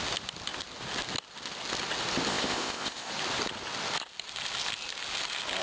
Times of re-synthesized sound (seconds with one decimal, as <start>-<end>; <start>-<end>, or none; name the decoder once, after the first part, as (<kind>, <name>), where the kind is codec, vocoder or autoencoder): 2.3-3.1 (codec, ZipCodec)